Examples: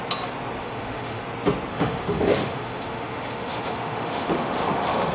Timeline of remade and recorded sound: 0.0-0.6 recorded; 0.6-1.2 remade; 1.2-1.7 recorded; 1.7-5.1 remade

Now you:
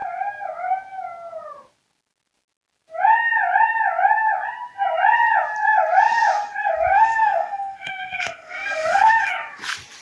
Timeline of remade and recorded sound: 0.0-6.9 recorded; 6.9-9.3 remade; 9.3-10.0 recorded

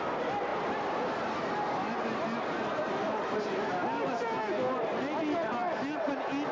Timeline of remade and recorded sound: 0.0-6.5 recorded

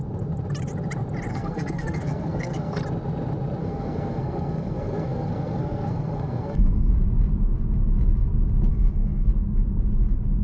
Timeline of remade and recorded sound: 0.0-1.3 recorded; 1.3-2.8 remade; 2.8-3.6 recorded; 3.6-6.9 remade; 6.9-8.7 recorded; 8.7-9.3 remade; 9.3-10.4 recorded

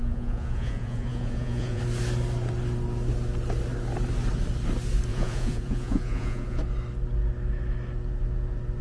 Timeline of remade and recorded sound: 0.0-1.8 remade; 1.8-5.1 recorded; 5.1-6.6 remade; 6.6-8.8 recorded

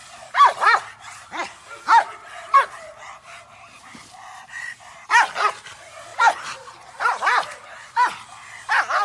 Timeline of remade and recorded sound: 0.0-2.3 remade; 2.3-6.1 recorded; 6.1-8.4 remade; 8.4-9.0 recorded

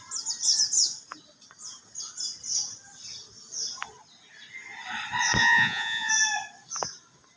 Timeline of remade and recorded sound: 0.0-5.4 recorded; 5.4-6.1 remade; 6.1-7.4 recorded